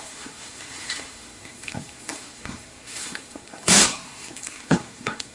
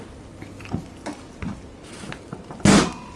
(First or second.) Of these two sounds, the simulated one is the first